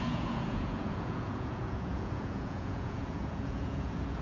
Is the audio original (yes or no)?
no